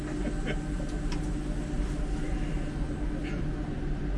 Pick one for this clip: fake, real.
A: real